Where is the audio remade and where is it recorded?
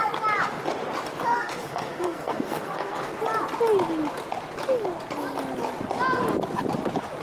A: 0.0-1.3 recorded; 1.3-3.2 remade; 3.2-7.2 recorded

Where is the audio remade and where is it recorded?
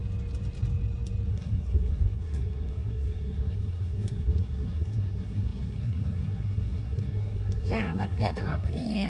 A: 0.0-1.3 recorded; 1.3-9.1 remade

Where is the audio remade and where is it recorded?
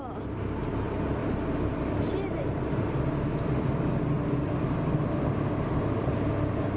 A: 0.0-6.8 recorded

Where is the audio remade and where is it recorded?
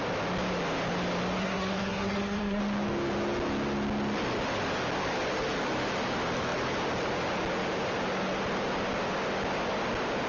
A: 0.0-1.4 recorded; 1.4-2.6 remade; 2.6-10.3 recorded